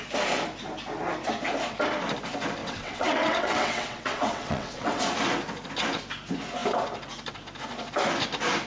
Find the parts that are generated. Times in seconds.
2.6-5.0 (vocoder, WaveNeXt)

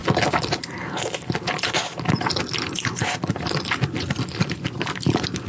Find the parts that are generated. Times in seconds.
none

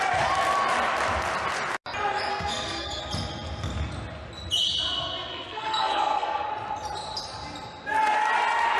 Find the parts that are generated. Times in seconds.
2.3-3.0 (codec, SNAC); 5.3-6.5

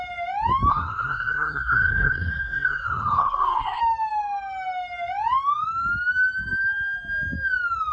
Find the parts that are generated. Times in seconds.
0.7-3.8 (codec, SNAC)

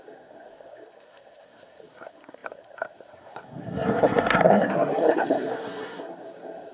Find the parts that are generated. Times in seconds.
0.0-6.7 (codec, SNAC)

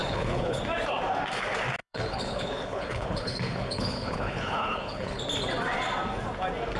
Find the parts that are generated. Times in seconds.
0.0-0.6 (codec, HILCodec); 1.8-5.2

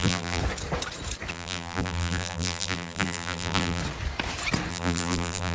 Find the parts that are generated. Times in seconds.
0.0-0.4 (vocoder, BigVGAN v2); 1.3-3.8; 4.7-5.5

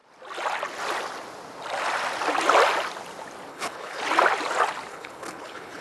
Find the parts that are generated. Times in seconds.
3.5-4.0 (codec, HILCodec); 4.9-5.8